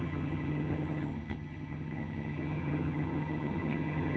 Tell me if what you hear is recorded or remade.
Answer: remade